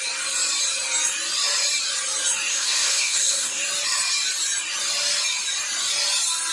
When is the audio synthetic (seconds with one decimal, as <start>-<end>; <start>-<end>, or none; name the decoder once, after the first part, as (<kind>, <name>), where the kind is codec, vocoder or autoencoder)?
2.5-3.6 (codec, SNAC)